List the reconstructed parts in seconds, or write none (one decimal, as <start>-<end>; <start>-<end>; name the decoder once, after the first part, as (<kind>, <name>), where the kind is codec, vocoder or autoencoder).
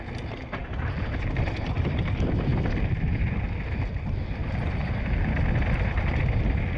none